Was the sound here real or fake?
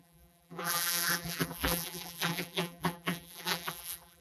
fake